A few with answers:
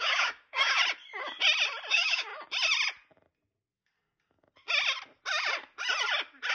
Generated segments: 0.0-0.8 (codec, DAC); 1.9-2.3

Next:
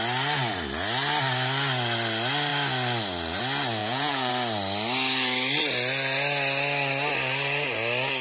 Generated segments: 3.8-4.3 (vocoder, Vocos)

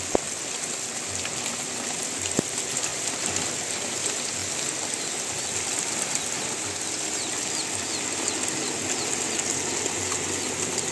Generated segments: none

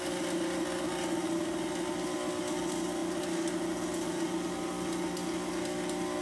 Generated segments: none